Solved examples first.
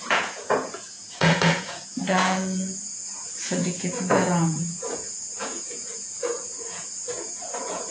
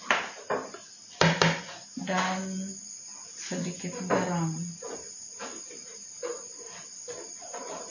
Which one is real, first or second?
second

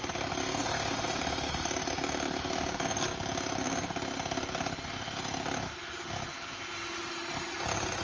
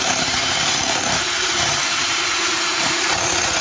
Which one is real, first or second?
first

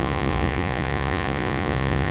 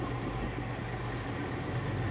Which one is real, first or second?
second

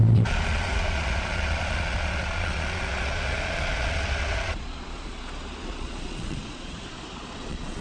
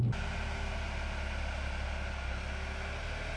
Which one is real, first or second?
second